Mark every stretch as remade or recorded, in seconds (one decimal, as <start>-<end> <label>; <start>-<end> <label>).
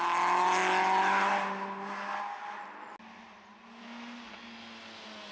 0.0-5.3 recorded